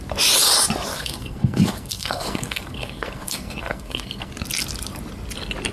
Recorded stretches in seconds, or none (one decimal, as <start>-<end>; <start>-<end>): 0.0-0.9; 4.3-5.7